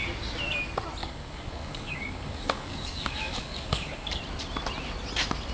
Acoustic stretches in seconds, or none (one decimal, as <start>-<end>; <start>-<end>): 0.0-1.0; 4.2-5.5